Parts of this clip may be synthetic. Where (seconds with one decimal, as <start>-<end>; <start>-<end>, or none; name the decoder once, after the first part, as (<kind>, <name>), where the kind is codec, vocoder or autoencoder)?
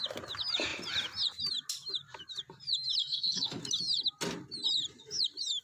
3.0-3.6 (codec, SNAC)